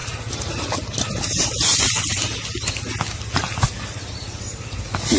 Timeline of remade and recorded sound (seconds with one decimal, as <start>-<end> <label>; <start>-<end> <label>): 0.0-5.2 recorded